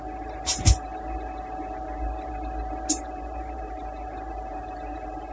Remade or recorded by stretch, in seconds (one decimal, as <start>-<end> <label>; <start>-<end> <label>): 0.0-0.9 remade; 0.9-3.0 recorded; 3.0-5.3 remade